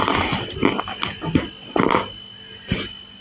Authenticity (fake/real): real